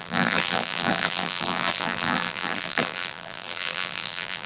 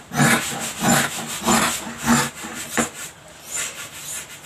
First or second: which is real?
second